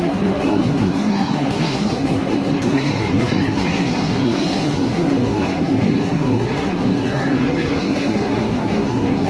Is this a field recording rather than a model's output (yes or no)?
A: no